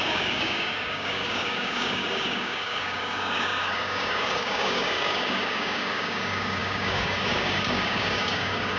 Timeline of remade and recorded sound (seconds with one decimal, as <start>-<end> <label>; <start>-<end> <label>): 0.0-8.8 remade